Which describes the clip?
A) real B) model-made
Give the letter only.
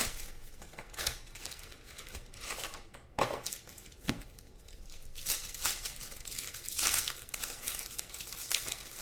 B